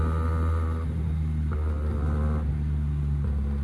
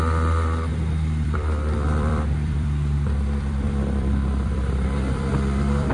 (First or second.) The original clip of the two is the first